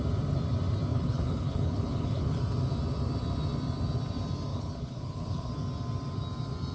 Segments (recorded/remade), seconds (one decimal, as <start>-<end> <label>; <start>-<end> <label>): 0.0-0.9 recorded; 0.9-2.4 remade; 2.4-4.5 recorded; 4.5-5.5 remade; 5.5-6.7 recorded

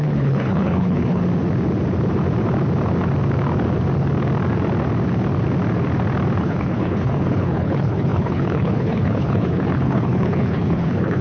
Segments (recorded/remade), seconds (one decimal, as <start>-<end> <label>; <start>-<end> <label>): 0.0-1.2 remade; 1.2-6.4 recorded; 6.4-11.2 remade

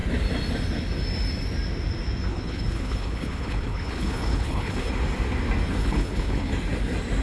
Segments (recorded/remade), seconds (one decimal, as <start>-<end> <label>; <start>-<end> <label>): 0.0-2.3 recorded; 2.3-4.9 remade; 4.9-5.8 recorded; 5.8-6.5 remade; 6.5-7.2 recorded

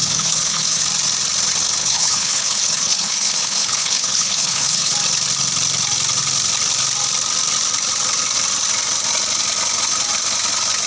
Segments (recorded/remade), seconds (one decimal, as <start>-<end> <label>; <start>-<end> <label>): 0.0-0.8 remade; 0.8-1.8 recorded; 1.8-4.9 remade; 4.9-10.9 recorded